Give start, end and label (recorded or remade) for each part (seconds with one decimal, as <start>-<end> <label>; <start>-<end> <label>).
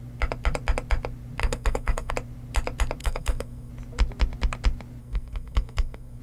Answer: 0.0-1.4 recorded; 1.4-2.1 remade; 2.1-3.0 recorded; 3.0-3.7 remade; 3.7-5.0 recorded; 5.0-6.2 remade